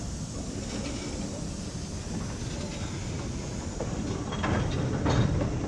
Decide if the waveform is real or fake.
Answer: real